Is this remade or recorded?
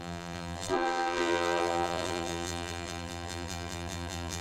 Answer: remade